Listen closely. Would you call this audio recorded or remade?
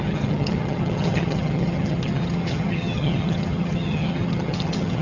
remade